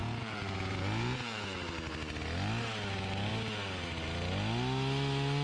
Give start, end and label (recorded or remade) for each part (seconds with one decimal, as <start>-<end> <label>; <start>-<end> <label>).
0.0-1.9 remade; 1.9-5.4 recorded